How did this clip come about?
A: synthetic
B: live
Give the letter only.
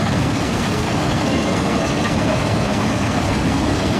A